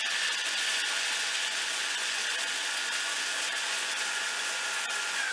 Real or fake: fake